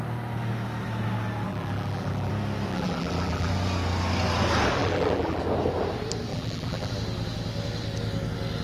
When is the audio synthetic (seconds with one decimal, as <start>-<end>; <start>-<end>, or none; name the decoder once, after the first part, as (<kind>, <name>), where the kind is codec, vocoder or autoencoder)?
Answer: 1.5-2.3 (vocoder, BigVGAN v2); 2.7-3.5; 4.8-5.4; 6.3-6.9